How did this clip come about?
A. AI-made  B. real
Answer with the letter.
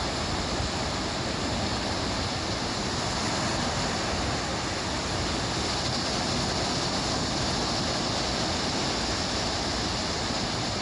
B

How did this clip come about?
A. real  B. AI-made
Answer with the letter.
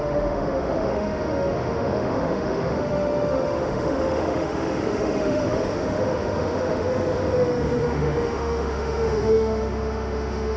B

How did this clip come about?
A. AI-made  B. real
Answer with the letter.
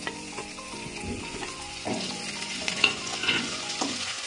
A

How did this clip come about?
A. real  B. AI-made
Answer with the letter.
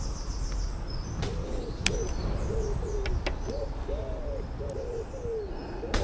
A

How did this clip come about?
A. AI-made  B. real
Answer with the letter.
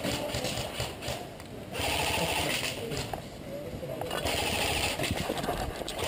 B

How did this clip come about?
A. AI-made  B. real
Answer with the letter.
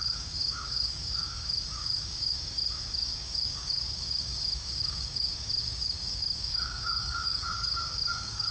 A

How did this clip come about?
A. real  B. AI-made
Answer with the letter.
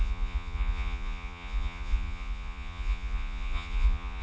B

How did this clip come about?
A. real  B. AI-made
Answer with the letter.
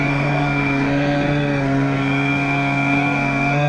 B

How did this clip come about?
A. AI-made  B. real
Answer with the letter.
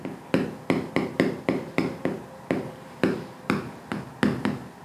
B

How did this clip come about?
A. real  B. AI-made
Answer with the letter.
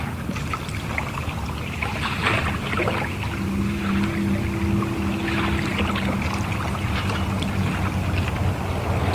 A